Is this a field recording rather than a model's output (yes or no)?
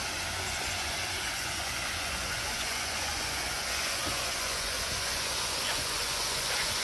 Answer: no